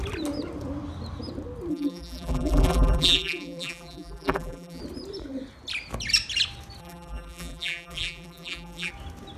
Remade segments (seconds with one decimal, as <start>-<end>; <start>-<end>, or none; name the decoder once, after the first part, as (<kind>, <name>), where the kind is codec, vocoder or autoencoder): 1.7-4.8 (vocoder, BigVGAN v2); 6.8-8.9